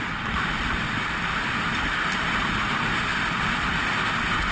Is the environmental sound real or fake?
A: real